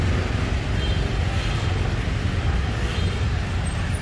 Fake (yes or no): no